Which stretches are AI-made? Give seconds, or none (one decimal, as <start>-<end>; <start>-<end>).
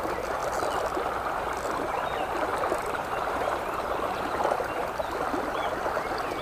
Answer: 2.5-4.7